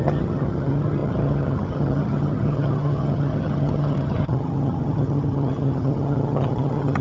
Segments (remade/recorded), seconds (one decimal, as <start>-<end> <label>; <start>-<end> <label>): 0.0-7.0 remade

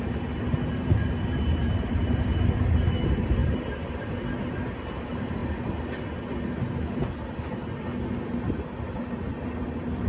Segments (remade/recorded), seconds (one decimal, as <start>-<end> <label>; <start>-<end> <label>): 0.0-5.4 remade; 5.4-9.4 recorded; 9.4-10.1 remade

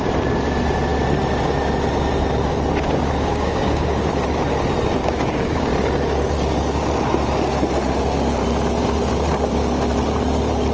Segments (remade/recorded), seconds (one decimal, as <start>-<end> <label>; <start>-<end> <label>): 0.0-3.3 recorded; 3.3-4.1 remade; 4.1-5.0 recorded; 5.0-5.7 remade; 5.7-10.7 recorded

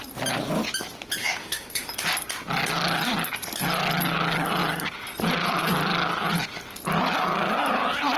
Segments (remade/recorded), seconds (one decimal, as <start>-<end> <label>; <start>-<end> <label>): 0.0-1.2 recorded; 1.2-1.9 remade; 1.9-8.2 recorded